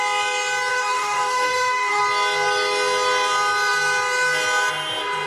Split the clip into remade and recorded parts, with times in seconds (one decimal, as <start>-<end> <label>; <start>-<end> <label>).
0.0-0.7 recorded; 0.7-2.0 remade; 2.0-5.3 recorded